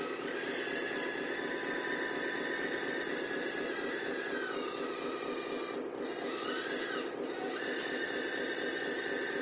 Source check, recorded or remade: recorded